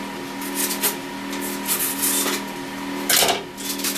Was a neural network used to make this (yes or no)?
no